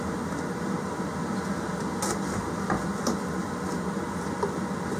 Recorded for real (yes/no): yes